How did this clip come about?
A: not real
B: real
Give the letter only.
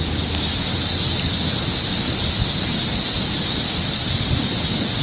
B